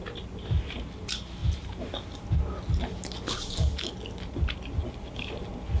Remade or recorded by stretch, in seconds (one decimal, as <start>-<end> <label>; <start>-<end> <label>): 0.0-5.8 recorded

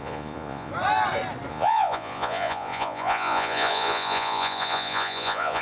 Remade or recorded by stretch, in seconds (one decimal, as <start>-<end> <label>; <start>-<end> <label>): 0.0-0.7 remade; 0.7-1.5 recorded; 1.5-5.6 remade

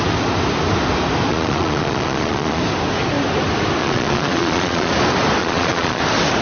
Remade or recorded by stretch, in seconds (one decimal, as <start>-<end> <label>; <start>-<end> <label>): 0.0-1.3 recorded; 1.3-2.6 remade; 2.6-3.8 recorded; 3.8-4.9 remade; 4.9-5.4 recorded; 5.4-6.0 remade; 6.0-6.4 recorded

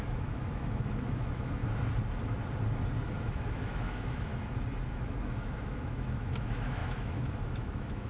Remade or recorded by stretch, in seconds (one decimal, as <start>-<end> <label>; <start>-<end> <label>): 0.0-1.6 remade; 1.6-3.2 recorded; 3.2-4.3 remade; 4.3-4.9 recorded; 4.9-8.1 remade

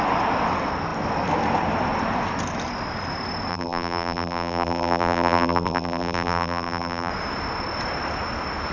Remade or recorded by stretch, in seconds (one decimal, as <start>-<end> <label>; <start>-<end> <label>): 0.0-3.5 recorded; 3.5-7.1 remade; 7.1-8.7 recorded